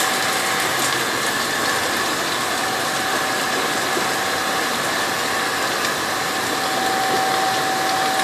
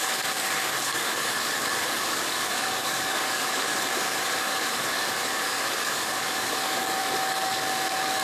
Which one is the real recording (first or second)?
first